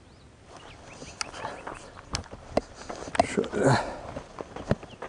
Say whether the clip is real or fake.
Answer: real